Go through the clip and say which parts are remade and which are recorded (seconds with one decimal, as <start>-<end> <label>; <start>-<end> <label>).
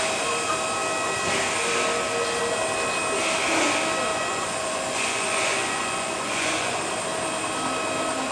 0.0-4.1 recorded; 4.1-6.8 remade; 6.8-8.3 recorded